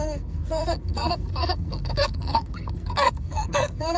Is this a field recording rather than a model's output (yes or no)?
no